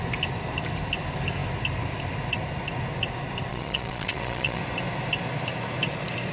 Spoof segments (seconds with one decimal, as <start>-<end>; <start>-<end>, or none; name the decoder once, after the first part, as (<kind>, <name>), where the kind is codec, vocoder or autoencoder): 3.5-4.6 (vocoder, Vocos)